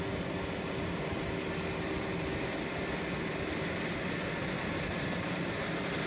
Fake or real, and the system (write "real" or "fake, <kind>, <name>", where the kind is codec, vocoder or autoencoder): real